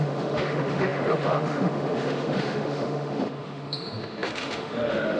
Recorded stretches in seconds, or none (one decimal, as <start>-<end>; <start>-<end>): none